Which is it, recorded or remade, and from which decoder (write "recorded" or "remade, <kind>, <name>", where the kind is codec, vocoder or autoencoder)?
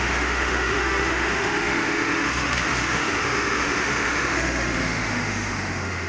remade, autoencoder, DAC-VAE